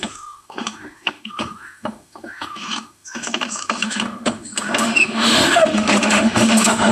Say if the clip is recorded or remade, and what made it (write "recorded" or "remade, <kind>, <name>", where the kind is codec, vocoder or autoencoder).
remade, autoencoder, DAC-VAE